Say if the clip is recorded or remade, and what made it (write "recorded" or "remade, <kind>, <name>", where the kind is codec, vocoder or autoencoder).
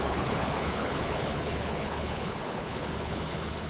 remade, codec, HILCodec